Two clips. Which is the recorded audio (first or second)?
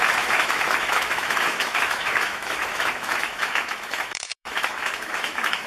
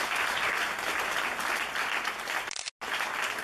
second